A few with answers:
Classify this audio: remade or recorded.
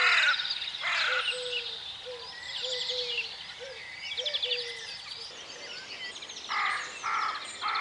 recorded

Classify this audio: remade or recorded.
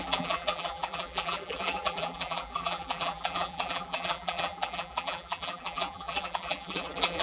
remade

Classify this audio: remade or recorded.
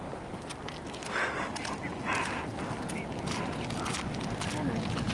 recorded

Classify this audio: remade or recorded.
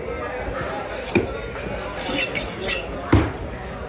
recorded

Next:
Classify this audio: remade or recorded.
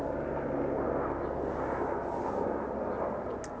recorded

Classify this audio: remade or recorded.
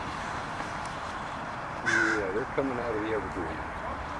remade